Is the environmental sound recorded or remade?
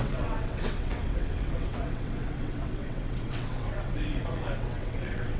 remade